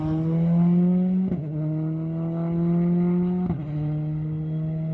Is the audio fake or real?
real